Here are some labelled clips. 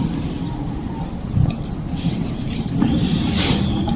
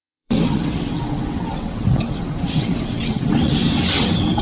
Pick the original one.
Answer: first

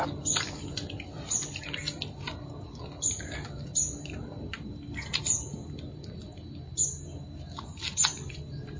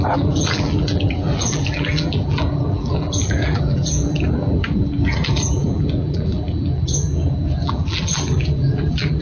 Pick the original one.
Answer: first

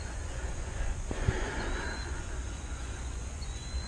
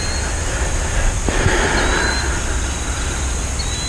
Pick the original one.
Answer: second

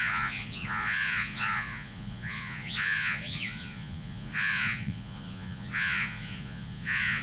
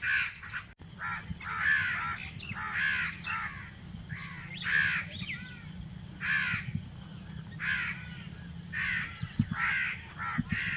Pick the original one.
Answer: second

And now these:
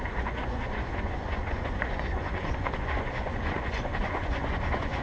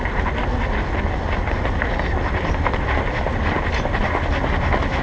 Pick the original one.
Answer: second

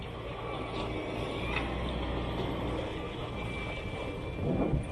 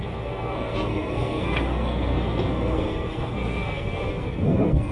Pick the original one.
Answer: first